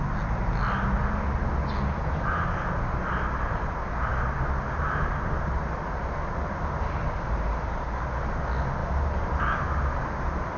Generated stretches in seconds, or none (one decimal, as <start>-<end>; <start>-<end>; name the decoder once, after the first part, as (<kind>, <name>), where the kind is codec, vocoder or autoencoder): none

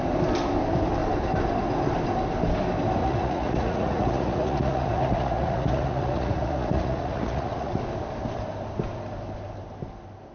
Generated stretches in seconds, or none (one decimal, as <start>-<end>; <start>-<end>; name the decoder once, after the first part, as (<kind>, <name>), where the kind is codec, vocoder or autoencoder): 3.0-7.8 (vocoder, Vocos)

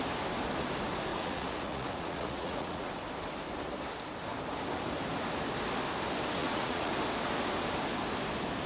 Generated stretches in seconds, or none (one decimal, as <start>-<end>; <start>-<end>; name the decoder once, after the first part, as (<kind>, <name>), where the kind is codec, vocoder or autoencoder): 1.1-2.9 (vocoder, Vocos); 6.4-6.9

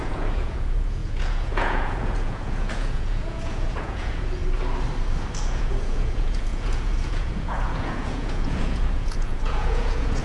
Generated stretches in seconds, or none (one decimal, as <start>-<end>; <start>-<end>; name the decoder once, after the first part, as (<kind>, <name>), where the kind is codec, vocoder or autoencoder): 0.0-4.4 (vocoder, Vocos); 5.4-10.2